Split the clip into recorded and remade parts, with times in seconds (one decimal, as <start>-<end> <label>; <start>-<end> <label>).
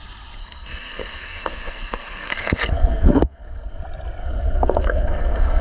0.0-0.4 recorded; 0.4-3.8 remade; 3.8-4.2 recorded; 4.2-5.6 remade